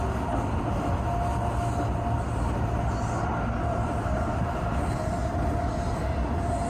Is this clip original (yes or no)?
yes